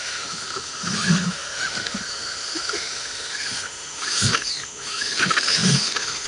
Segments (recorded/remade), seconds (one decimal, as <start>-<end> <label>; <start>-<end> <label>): 0.0-6.3 remade